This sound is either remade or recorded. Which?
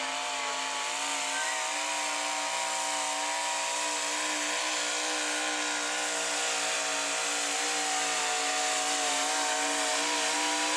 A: recorded